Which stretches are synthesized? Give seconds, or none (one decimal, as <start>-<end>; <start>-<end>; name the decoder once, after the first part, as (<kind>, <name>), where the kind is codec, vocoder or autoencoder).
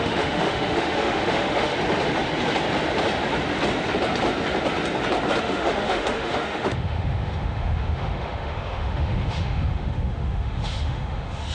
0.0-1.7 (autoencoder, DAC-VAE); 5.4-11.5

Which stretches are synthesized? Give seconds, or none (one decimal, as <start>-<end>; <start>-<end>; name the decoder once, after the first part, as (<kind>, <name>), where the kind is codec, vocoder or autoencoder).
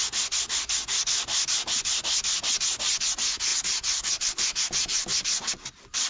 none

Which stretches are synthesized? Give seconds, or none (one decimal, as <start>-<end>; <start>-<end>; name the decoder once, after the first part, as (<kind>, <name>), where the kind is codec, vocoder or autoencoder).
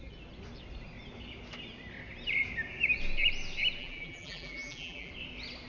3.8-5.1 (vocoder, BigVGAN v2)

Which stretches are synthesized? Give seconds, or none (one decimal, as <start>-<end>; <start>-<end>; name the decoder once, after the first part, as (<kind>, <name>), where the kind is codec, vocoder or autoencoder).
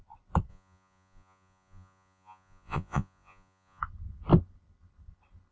0.5-3.8 (vocoder, Vocos)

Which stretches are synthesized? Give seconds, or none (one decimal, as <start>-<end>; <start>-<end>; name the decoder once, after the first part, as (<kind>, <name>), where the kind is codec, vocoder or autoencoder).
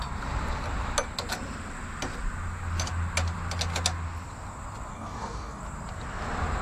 4.9-5.6 (codec, DAC)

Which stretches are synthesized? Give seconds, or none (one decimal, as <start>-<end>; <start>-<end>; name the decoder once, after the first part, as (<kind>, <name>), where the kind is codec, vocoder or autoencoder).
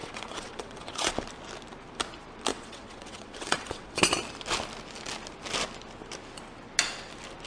0.0-1.1 (vocoder, WaveNeXt); 2.5-4.0